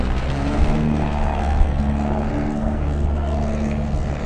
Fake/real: fake